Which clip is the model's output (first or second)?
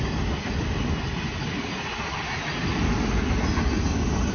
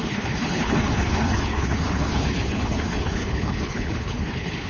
second